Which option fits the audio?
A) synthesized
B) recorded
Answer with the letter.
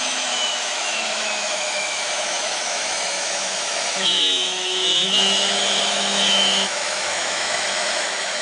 A